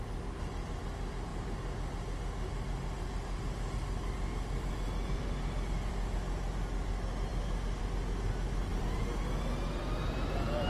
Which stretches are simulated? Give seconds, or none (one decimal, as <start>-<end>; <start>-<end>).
none